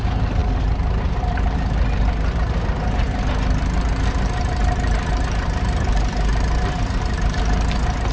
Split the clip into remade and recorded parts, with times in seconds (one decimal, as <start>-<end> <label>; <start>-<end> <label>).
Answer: 0.0-8.1 recorded